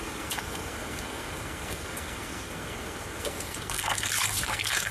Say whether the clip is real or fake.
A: fake